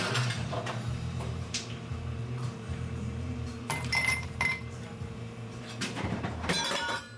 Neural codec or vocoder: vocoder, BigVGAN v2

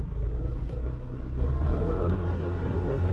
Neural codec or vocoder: codec, SNAC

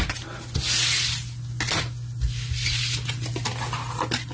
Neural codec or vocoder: none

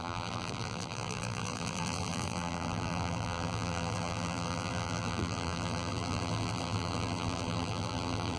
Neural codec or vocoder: vocoder, BigVGAN v2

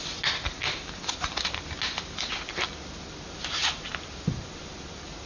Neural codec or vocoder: none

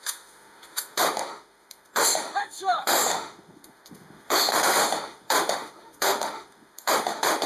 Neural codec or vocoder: autoencoder, DAC-VAE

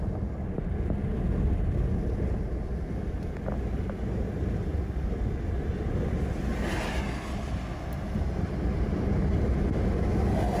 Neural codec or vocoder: none